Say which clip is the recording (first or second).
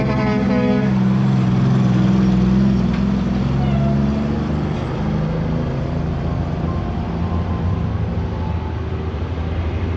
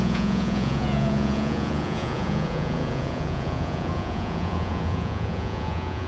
first